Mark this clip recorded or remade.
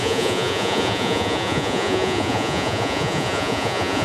remade